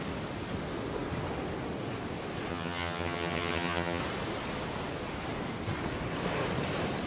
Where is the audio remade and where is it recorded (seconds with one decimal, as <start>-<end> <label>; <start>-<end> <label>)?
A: 0.0-2.5 recorded; 2.5-4.0 remade; 4.0-7.1 recorded